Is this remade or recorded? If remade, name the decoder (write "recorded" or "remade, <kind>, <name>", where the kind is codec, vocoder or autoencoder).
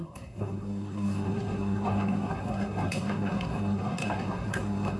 remade, codec, SNAC